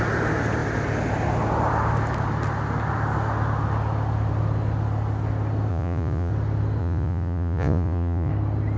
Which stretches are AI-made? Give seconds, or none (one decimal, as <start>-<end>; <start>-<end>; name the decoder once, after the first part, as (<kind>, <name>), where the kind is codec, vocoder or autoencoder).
5.7-6.3 (vocoder, Vocos); 6.8-8.3